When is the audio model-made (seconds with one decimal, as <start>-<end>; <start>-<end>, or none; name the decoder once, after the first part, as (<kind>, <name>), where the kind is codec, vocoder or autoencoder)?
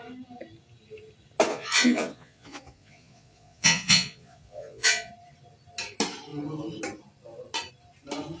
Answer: 1.5-5.1 (vocoder, Vocos)